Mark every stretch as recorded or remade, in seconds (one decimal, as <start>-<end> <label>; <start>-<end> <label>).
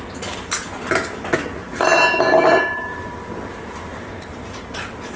0.0-1.7 recorded; 1.7-4.8 remade; 4.8-5.2 recorded